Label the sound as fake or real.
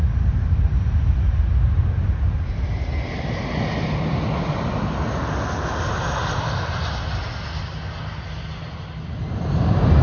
real